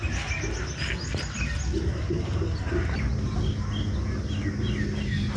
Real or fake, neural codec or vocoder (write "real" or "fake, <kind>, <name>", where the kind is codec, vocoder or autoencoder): real